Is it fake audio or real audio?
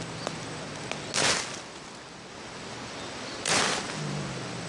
real